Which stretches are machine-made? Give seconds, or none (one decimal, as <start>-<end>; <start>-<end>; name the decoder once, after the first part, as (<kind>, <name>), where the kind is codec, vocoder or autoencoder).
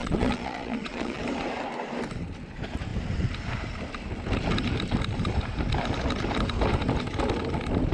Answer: 0.0-1.2 (vocoder, Vocos)